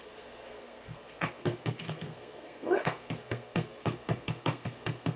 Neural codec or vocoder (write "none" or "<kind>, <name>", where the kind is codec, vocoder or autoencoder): codec, SNAC